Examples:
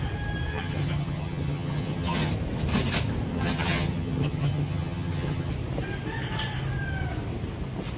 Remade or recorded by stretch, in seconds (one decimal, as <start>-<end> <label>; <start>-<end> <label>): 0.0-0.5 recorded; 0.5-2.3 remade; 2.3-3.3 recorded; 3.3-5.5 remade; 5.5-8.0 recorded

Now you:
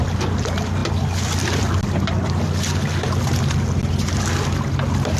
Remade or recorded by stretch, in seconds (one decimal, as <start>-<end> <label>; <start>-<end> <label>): 0.0-5.2 recorded

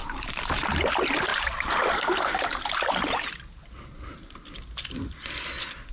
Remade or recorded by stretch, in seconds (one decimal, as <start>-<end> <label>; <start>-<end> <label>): 0.0-0.9 remade; 0.9-1.3 recorded; 1.3-2.7 remade; 2.7-5.9 recorded

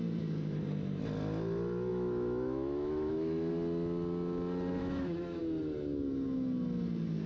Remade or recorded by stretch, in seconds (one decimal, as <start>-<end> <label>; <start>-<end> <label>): 0.0-1.9 recorded; 1.9-3.5 remade; 3.5-4.8 recorded; 4.8-5.4 remade; 5.4-7.3 recorded